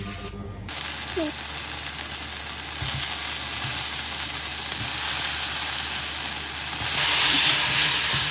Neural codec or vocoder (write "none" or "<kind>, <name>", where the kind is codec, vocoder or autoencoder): none